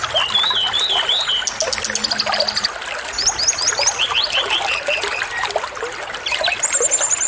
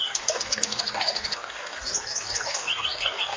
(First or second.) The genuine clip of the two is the first